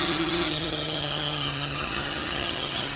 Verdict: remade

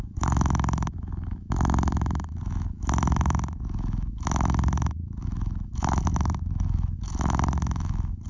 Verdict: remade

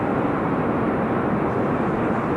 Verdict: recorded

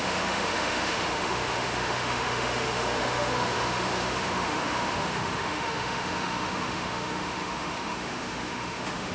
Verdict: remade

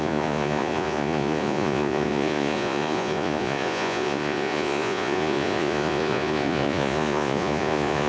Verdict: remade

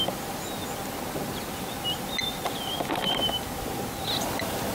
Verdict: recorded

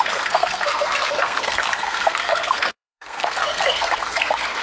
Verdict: remade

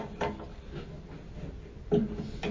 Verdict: recorded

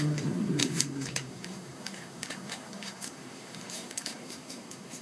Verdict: remade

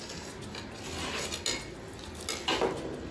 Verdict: recorded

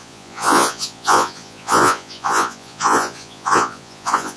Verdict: remade